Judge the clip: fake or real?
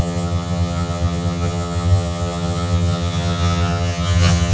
fake